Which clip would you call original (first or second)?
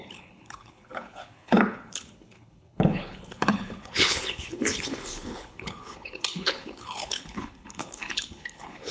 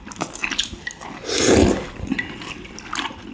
second